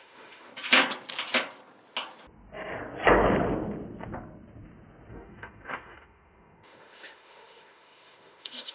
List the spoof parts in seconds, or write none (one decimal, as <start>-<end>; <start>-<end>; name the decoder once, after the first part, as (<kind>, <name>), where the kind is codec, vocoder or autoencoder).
0.0-0.5 (autoencoder, DAC-VAE); 5.1-8.7